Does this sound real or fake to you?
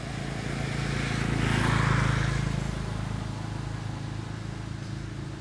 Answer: real